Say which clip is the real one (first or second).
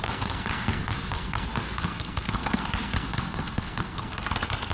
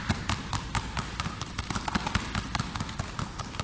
second